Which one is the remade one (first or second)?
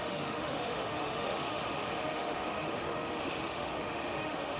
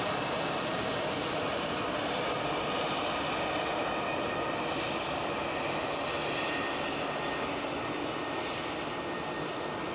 first